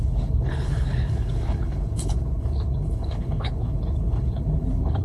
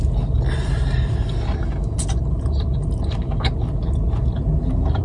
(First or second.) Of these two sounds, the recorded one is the second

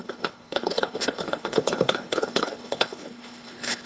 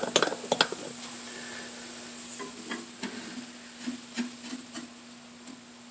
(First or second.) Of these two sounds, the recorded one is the second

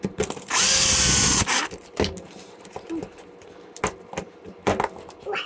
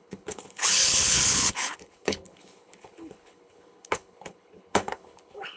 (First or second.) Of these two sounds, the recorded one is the first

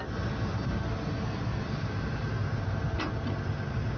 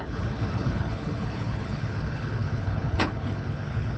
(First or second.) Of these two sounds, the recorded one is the first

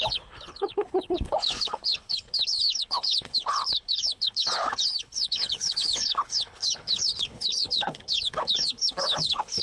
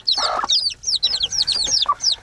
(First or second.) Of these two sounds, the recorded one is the second